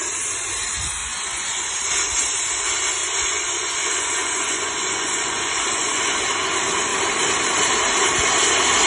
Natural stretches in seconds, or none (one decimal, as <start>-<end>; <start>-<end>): 0.0-1.0; 1.7-3.0; 6.2-8.9